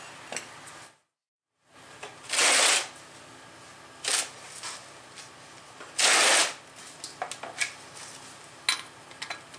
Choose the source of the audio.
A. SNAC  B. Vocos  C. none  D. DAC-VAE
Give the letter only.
C